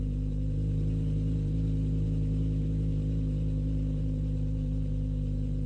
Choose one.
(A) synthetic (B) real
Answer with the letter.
A